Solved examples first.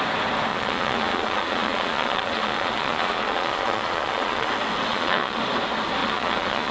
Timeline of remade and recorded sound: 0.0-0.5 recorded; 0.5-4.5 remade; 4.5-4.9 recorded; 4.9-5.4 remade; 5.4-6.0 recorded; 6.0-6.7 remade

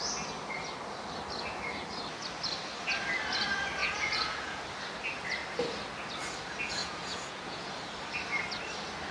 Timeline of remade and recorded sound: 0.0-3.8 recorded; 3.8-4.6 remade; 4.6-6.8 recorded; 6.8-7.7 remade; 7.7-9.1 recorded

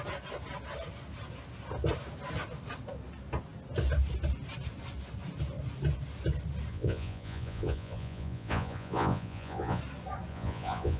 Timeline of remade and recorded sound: 0.0-6.7 recorded; 6.7-9.8 remade; 9.8-10.3 recorded; 10.3-11.0 remade